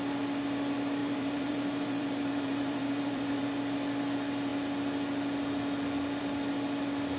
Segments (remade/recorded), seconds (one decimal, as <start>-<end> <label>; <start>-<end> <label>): 0.0-1.0 recorded; 1.0-3.4 remade; 3.4-7.2 recorded